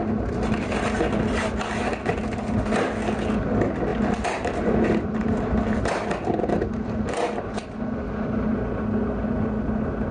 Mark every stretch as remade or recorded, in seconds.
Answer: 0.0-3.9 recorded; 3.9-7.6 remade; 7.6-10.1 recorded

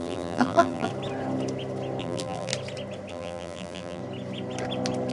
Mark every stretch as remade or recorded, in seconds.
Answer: 0.0-0.9 remade; 0.9-2.0 recorded; 2.0-2.5 remade; 2.5-3.1 recorded; 3.1-4.0 remade; 4.0-5.1 recorded

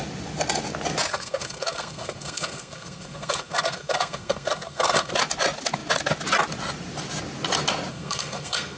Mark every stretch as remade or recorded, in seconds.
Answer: 0.0-1.1 recorded; 1.1-5.1 remade; 5.1-7.9 recorded; 7.9-8.8 remade

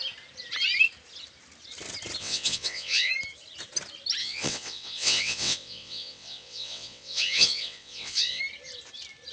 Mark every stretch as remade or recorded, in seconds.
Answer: 0.0-2.2 recorded; 2.2-3.1 remade; 3.1-4.2 recorded; 4.2-8.4 remade; 8.4-9.3 recorded